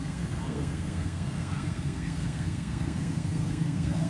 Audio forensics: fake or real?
fake